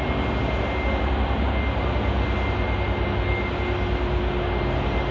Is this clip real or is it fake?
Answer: real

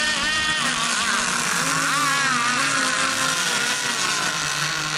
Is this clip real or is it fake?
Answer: real